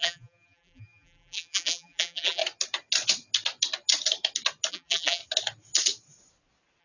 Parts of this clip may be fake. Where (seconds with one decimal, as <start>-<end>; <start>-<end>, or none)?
0.0-2.4; 4.7-5.2